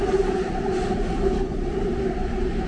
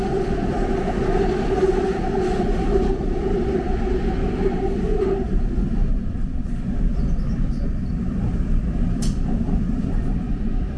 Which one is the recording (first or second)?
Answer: first